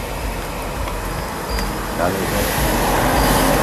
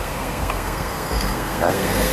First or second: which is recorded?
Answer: first